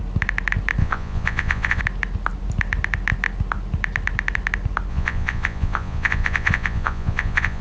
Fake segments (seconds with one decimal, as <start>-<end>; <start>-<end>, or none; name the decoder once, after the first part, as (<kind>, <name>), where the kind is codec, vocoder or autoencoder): 0.8-1.8 (vocoder, Vocos); 4.9-7.6